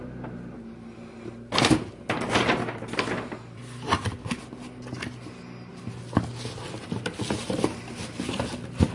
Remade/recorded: recorded